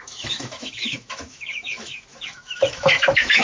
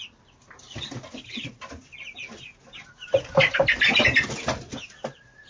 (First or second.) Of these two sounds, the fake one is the first